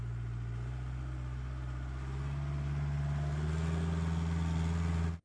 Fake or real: real